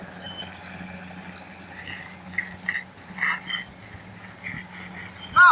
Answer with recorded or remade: recorded